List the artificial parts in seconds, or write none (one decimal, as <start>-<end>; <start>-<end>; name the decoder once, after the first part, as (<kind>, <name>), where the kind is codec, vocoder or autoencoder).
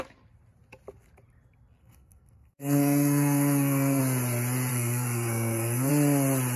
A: 1.8-4.0 (codec, SNAC); 4.7-5.9